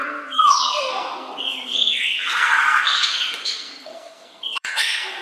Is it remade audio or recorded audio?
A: remade